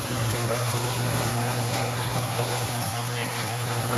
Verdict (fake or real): fake